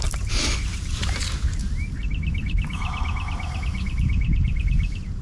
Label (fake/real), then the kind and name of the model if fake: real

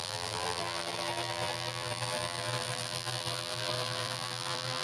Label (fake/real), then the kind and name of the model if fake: fake, vocoder, BigVGAN v2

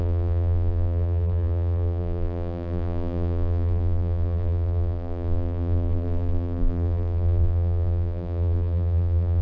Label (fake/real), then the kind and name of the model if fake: fake, vocoder, BigVGAN v2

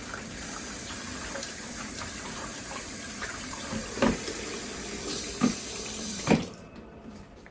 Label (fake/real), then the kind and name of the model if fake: fake, vocoder, BigVGAN v2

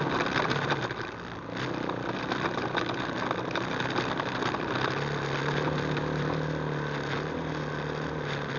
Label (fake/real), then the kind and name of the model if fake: real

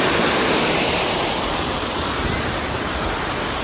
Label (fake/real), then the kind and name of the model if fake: fake, vocoder, BigVGAN v2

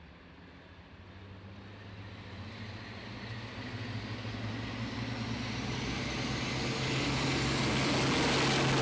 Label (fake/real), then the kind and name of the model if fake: real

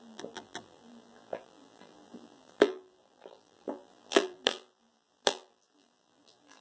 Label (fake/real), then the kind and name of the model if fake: fake, vocoder, BigVGAN v2